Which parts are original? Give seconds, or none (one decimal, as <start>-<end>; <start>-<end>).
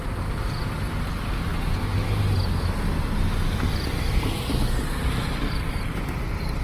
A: 0.0-6.6